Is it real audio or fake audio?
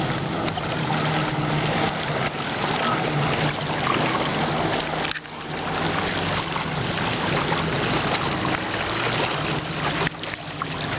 real